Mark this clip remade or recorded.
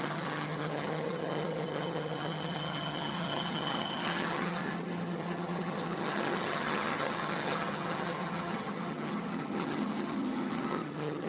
remade